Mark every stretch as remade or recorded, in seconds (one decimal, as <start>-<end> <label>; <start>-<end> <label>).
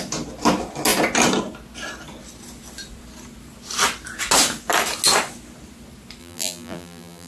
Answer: 0.0-6.2 recorded; 6.2-7.3 remade